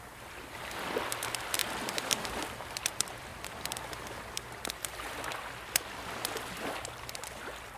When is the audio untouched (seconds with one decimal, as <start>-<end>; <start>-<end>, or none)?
none

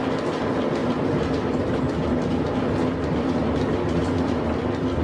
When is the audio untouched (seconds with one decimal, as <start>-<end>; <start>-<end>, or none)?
0.0-5.0

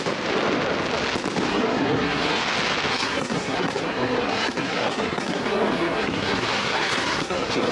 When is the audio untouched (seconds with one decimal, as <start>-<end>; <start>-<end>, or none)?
0.0-1.5; 2.4-2.9

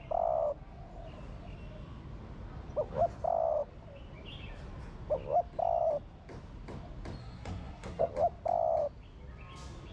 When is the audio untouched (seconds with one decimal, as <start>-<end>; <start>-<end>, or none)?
0.0-7.2; 8.1-9.9

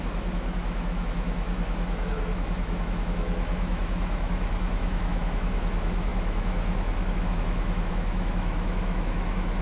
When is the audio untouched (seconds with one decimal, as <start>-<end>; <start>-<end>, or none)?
none

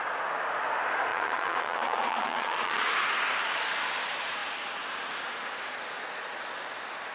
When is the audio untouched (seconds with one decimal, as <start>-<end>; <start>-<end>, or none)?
0.0-1.1; 2.9-7.1